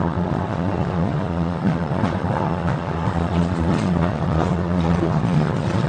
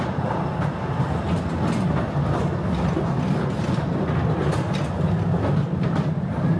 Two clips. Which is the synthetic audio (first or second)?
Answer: first